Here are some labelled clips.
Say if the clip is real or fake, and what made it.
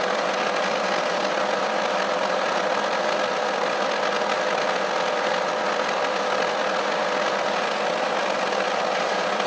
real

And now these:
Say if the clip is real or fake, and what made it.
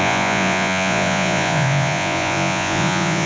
fake, vocoder, Vocos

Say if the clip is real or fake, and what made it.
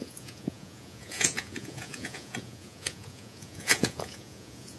fake, vocoder, Vocos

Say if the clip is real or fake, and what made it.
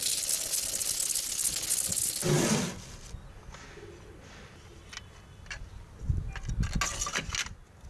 real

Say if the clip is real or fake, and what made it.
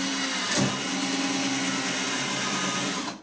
real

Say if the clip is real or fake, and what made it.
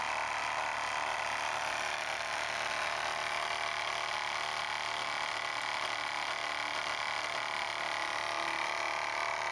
real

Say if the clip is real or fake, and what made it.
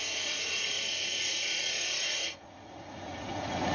fake, vocoder, Vocos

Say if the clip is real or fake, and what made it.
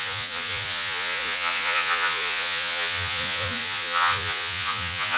fake, vocoder, Vocos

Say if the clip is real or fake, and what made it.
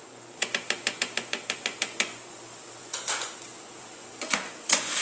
fake, vocoder, Vocos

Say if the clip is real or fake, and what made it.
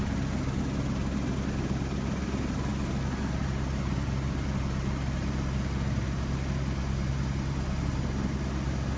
real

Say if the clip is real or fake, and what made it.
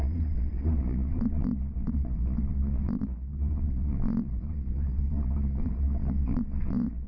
fake, vocoder, Vocos